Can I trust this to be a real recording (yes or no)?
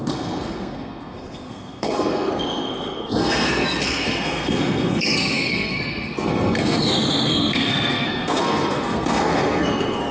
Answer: no